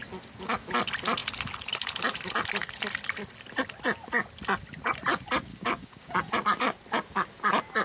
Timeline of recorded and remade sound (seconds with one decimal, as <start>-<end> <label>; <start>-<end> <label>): 0.0-5.5 recorded; 5.5-6.1 remade; 6.1-7.8 recorded